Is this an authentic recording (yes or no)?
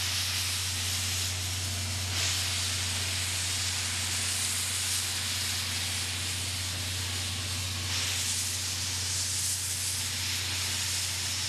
yes